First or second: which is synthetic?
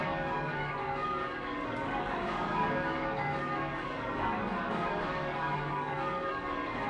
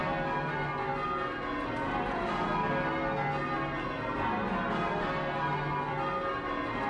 first